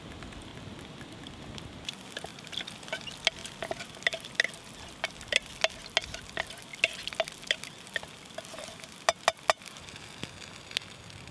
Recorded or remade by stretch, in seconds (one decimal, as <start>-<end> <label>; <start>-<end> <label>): 0.0-11.3 recorded